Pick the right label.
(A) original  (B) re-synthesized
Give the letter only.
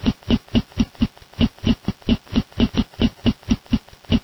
A